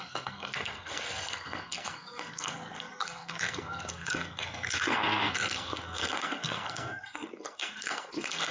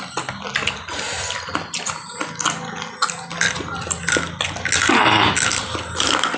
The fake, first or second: first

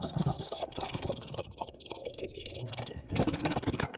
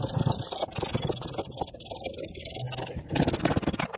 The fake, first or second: first